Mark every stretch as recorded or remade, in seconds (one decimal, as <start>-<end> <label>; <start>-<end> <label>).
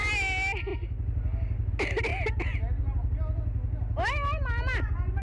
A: 0.0-5.2 recorded